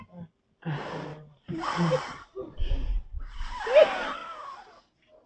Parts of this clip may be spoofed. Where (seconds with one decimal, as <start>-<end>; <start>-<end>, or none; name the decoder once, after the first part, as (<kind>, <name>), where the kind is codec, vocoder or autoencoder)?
1.1-2.7 (vocoder, BigVGAN v2)